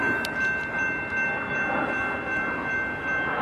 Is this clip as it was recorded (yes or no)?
yes